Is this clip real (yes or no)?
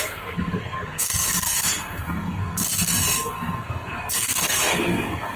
no